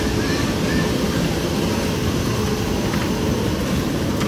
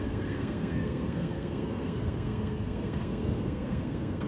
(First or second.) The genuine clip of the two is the first